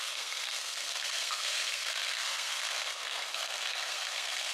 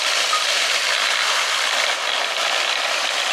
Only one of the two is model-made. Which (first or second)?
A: first